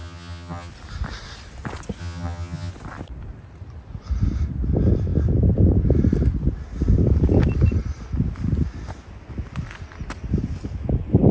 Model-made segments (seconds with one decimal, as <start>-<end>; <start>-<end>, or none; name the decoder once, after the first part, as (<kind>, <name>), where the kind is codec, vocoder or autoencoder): 0.0-0.7 (vocoder, HiFi-GAN); 2.0-2.7